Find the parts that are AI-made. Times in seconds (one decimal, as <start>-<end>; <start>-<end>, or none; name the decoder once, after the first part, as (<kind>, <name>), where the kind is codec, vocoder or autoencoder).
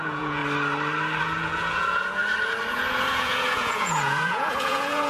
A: 0.0-0.4 (vocoder, Vocos); 1.2-2.2; 2.7-5.1